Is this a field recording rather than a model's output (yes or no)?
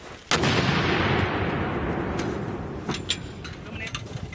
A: yes